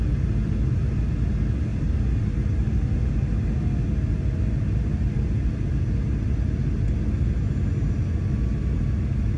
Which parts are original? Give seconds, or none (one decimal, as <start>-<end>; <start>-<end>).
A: 0.0-1.7; 3.1-9.4